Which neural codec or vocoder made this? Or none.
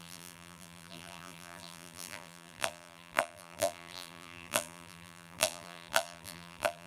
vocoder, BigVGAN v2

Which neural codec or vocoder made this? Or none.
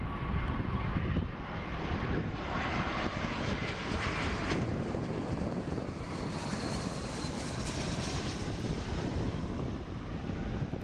vocoder, BigVGAN v2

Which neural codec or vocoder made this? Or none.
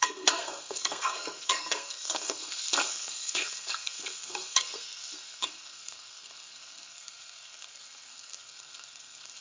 codec, SNAC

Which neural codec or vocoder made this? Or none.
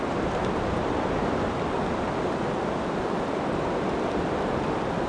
none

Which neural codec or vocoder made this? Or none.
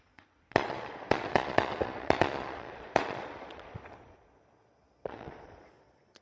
vocoder, Vocos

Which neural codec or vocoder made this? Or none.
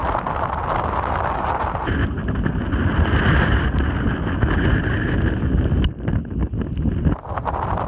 none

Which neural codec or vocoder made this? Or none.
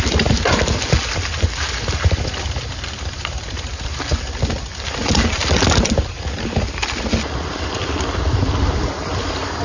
vocoder, BigVGAN v2